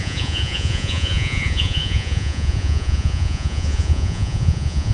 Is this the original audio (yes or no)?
no